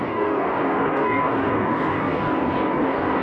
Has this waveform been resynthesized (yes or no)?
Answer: yes